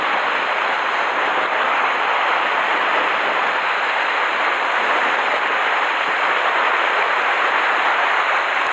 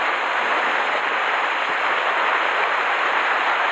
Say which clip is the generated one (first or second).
first